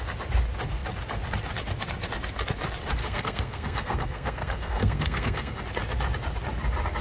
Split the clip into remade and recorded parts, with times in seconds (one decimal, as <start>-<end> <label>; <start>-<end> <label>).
0.0-3.0 recorded; 3.0-5.6 remade; 5.6-7.0 recorded